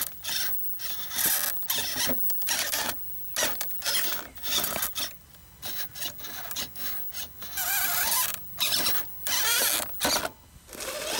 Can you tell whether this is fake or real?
real